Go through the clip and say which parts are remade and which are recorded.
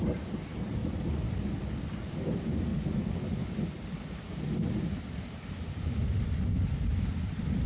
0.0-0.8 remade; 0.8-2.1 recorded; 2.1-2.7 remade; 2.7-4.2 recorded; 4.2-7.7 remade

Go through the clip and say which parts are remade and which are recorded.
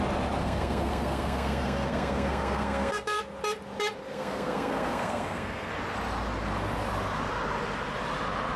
0.0-0.4 recorded; 0.4-3.2 remade; 3.2-4.0 recorded; 4.0-5.7 remade; 5.7-8.6 recorded